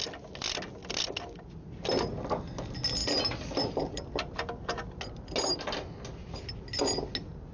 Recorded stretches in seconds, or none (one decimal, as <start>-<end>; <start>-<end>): 0.0-7.5